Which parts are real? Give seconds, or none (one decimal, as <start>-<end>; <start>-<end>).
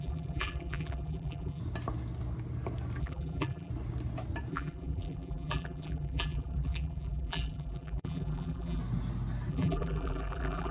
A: 1.6-3.0; 3.7-4.5; 8.8-9.5